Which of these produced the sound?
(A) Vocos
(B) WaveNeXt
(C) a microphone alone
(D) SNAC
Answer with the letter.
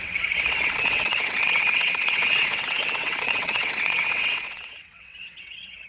B